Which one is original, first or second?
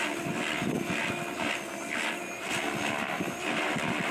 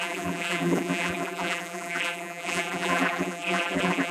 first